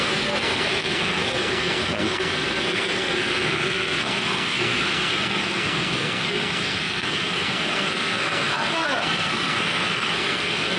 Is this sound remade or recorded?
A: remade